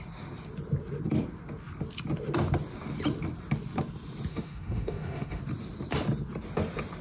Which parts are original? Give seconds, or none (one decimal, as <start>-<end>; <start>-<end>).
0.0-4.3; 5.4-7.0

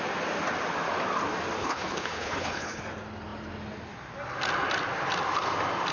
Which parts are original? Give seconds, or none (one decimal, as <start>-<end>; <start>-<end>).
0.0-1.6; 2.8-5.9

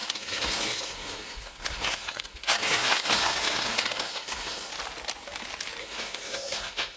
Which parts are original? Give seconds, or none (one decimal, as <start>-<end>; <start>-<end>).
4.7-5.8